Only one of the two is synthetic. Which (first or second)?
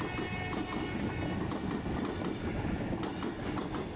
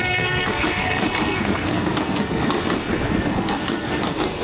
second